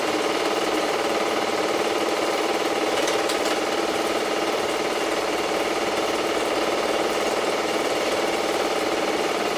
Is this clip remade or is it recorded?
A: remade